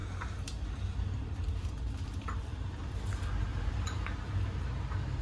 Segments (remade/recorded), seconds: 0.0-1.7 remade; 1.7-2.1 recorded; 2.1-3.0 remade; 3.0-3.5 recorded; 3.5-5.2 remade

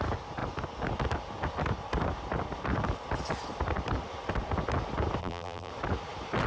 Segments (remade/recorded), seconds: 0.0-5.2 recorded; 5.2-5.7 remade; 5.7-6.5 recorded

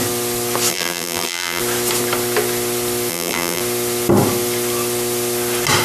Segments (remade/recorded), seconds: 0.0-0.7 recorded; 0.7-1.6 remade; 1.6-3.1 recorded; 3.1-3.6 remade; 3.6-5.8 recorded

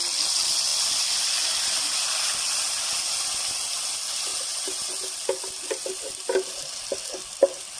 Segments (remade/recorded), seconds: 0.0-0.7 recorded; 0.7-1.2 remade; 1.2-7.8 recorded

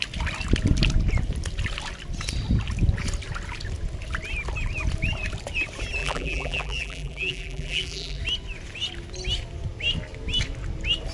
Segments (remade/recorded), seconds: 0.0-6.0 recorded; 6.0-8.2 remade; 8.2-11.1 recorded

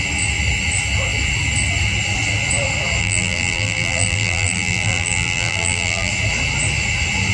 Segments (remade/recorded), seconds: 0.0-3.0 recorded; 3.0-6.1 remade; 6.1-7.3 recorded

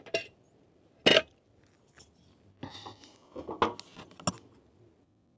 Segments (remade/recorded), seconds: 0.0-5.4 recorded